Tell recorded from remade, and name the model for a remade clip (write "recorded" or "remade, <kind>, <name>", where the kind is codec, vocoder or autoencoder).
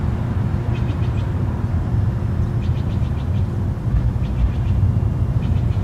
recorded